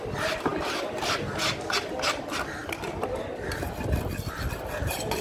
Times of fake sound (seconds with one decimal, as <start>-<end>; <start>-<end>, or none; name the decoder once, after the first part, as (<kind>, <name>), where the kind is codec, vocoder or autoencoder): none